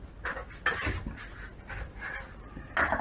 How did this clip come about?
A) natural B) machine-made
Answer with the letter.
A